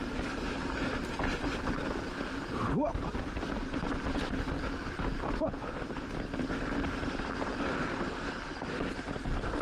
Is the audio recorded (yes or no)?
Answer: yes